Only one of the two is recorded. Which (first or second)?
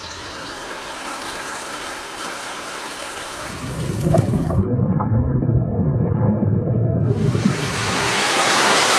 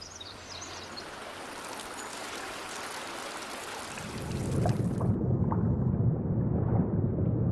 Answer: second